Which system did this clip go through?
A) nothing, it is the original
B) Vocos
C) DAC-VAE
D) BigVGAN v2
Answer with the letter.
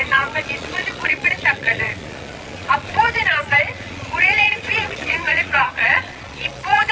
B